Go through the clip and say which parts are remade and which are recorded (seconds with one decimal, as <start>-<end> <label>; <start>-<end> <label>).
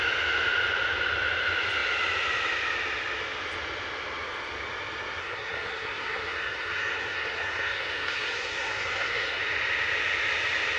0.0-5.2 recorded; 5.2-9.4 remade; 9.4-10.8 recorded